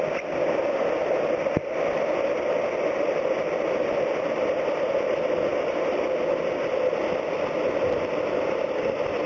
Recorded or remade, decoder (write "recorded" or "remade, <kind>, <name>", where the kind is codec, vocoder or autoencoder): recorded